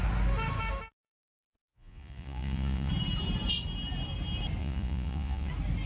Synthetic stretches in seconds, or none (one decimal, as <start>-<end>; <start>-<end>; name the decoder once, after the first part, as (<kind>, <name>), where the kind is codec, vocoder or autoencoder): 1.6-2.9 (vocoder, Vocos); 4.6-5.5